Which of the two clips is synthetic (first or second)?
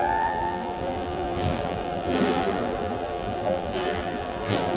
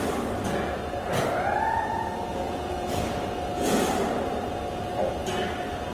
first